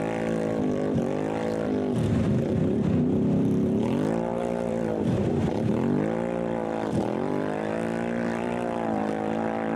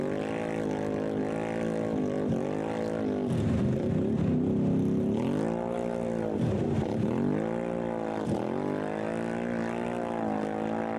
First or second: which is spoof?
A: first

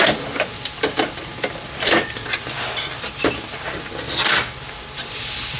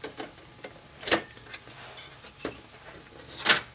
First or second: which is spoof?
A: first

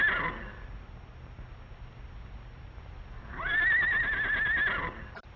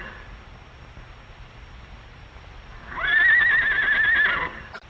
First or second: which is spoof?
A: second